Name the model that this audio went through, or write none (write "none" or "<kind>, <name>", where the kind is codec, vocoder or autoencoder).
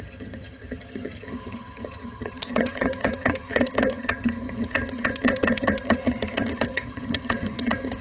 vocoder, HiFi-GAN